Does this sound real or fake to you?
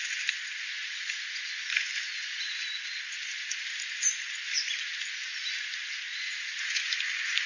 real